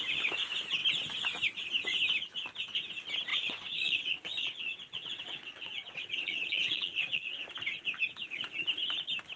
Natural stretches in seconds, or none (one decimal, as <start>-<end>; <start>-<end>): 0.0-3.3; 7.4-9.4